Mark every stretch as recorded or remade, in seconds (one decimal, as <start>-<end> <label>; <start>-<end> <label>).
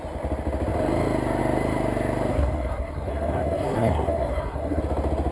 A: 0.0-2.3 recorded; 2.3-4.8 remade; 4.8-5.3 recorded